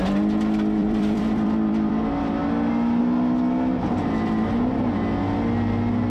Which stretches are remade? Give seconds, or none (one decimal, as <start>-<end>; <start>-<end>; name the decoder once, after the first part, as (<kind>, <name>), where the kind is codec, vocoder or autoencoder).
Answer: 0.8-1.9 (vocoder, BigVGAN v2)